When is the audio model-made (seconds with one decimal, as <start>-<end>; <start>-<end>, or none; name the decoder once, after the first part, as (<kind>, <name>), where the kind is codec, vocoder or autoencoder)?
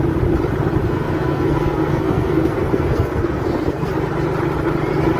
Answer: 0.8-3.9 (codec, SNAC)